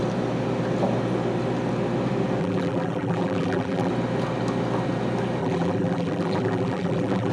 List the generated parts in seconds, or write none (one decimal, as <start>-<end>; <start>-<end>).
2.4-3.9; 5.4-7.3